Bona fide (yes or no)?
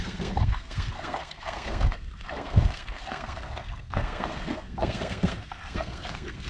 no